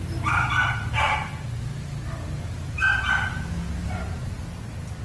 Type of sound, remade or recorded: recorded